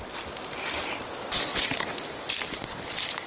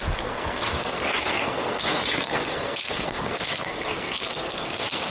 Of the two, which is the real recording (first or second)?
first